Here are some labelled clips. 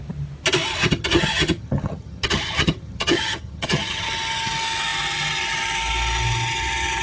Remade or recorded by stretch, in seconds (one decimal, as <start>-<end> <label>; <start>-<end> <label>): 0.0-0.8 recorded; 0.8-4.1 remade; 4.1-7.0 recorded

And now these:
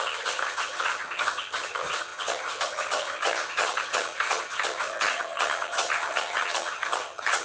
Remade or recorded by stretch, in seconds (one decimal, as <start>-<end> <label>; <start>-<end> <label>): 0.0-7.4 remade

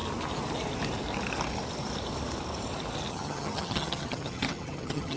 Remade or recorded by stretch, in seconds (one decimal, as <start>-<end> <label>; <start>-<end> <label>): 0.0-3.1 recorded; 3.1-5.2 remade

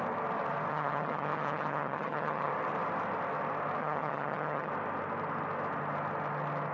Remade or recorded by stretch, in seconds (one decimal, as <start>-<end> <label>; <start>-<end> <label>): 0.0-0.7 recorded; 0.7-2.5 remade; 2.5-3.8 recorded; 3.8-4.7 remade; 4.7-6.7 recorded